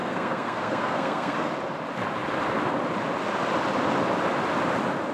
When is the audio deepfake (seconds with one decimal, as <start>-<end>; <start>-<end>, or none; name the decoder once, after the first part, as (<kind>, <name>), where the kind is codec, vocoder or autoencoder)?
0.0-1.5 (codec, SNAC)